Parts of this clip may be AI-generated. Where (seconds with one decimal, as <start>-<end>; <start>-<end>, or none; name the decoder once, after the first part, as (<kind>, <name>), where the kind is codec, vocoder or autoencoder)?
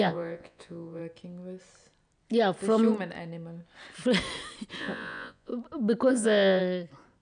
0.0-1.0 (vocoder, Vocos); 4.8-5.5; 6.1-6.6